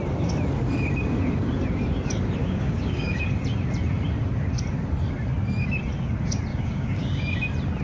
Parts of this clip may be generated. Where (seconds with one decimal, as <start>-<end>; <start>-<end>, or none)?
2.4-3.2; 6.5-7.2